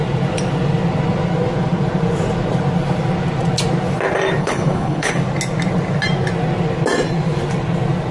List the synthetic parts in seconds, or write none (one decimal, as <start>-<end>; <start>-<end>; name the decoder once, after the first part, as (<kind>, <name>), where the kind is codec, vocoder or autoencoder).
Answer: 4.4-5.1 (codec, HILCodec)